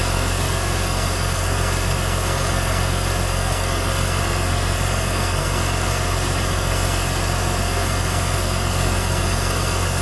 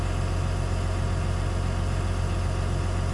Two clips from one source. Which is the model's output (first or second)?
first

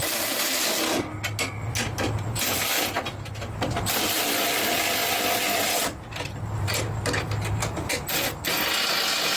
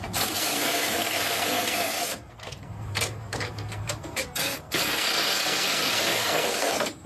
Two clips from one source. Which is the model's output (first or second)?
second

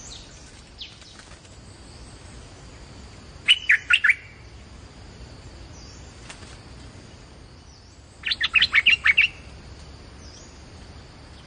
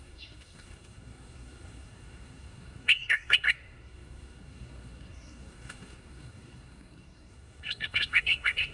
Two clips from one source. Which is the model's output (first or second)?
second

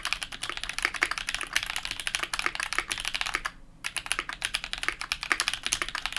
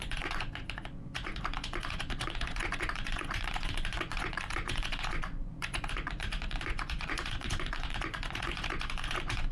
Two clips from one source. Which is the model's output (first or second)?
second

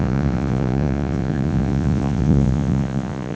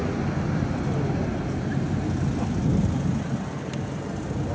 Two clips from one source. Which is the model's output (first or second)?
first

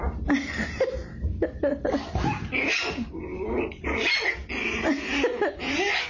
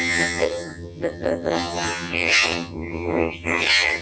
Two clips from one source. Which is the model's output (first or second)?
second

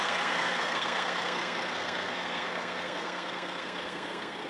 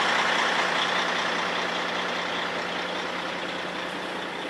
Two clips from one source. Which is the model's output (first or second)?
first